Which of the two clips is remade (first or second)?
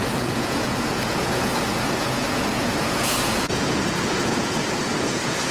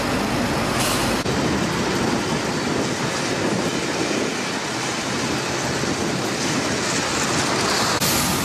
first